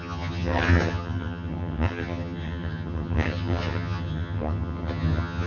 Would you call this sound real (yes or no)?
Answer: no